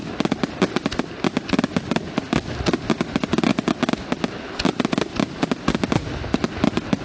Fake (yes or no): no